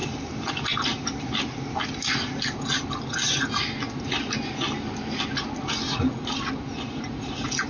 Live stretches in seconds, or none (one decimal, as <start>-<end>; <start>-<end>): 0.0-7.7